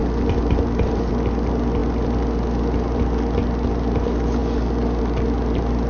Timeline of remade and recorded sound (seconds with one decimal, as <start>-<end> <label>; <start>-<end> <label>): 0.0-5.9 recorded